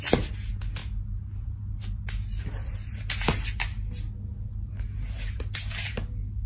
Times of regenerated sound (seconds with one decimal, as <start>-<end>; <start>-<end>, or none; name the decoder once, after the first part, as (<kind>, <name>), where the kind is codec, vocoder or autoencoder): none